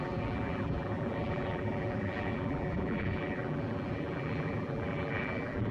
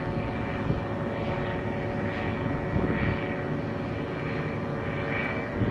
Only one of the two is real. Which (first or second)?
second